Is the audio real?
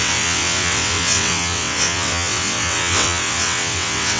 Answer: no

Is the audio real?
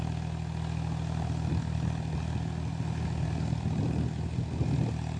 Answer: yes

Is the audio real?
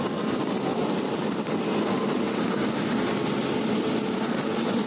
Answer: yes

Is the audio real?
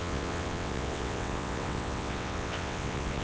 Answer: no